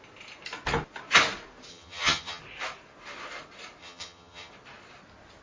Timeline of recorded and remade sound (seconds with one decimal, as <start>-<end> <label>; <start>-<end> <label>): 0.0-1.7 recorded; 1.7-2.4 remade; 2.4-3.8 recorded; 3.8-4.5 remade; 4.5-5.4 recorded